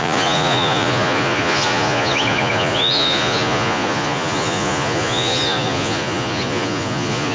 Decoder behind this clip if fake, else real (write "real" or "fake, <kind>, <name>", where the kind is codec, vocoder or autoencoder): fake, vocoder, Vocos